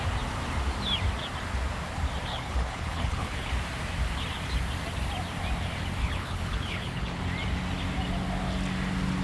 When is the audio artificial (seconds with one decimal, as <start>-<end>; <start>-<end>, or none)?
2.3-3.5; 6.0-7.2

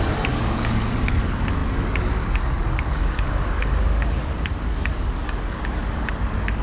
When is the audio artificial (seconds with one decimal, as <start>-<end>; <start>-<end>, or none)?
0.0-6.6

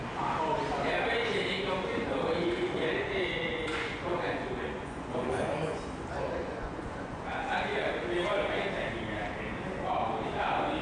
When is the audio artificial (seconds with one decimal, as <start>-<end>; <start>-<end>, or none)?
1.9-5.8; 6.4-8.7

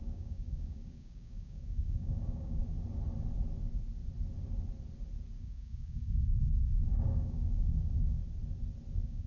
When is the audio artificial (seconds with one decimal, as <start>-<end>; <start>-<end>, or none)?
0.0-2.6; 5.4-8.2; 8.9-9.3

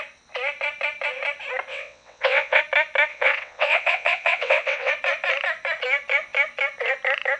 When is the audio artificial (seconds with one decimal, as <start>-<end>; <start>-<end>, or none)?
1.7-2.6; 3.1-4.9

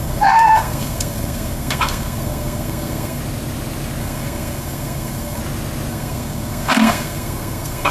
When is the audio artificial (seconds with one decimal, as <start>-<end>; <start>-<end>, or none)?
0.0-3.2; 4.0-5.4; 5.9-7.9